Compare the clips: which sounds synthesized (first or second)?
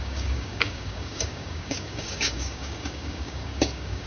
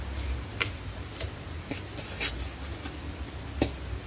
first